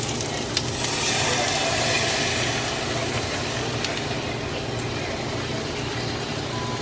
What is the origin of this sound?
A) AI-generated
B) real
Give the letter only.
A